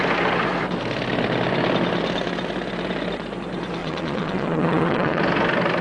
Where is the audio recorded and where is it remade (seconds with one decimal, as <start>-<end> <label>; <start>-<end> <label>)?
0.0-3.8 recorded; 3.8-5.2 remade; 5.2-5.8 recorded